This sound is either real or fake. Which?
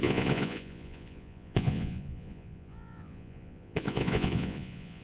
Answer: fake